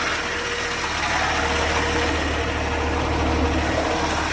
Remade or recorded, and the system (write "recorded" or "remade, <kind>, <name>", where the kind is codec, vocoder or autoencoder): recorded